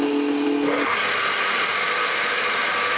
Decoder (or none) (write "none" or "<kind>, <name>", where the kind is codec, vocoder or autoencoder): none